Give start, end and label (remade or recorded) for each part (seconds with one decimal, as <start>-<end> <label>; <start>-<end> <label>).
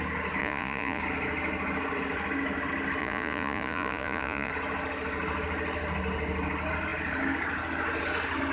0.0-0.4 recorded; 0.4-1.0 remade; 1.0-3.0 recorded; 3.0-4.5 remade; 4.5-8.5 recorded